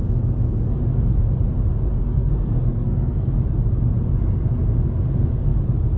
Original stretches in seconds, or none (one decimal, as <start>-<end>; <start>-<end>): 0.0-1.9; 3.3-6.0